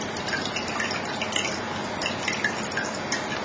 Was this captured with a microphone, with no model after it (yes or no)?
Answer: yes